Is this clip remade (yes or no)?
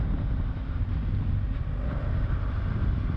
no